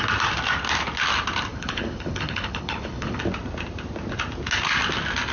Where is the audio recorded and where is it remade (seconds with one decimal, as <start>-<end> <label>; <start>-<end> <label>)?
0.0-1.5 recorded; 1.5-3.2 remade; 3.2-5.3 recorded